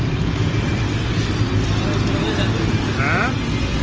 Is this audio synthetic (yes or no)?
no